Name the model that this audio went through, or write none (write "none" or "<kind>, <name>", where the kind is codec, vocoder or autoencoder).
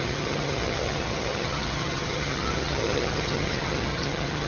vocoder, HiFi-GAN